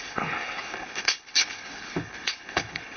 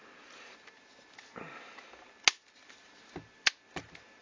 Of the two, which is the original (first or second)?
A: second